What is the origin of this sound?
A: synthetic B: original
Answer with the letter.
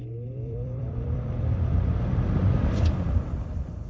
A